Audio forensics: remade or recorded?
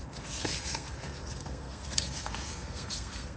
remade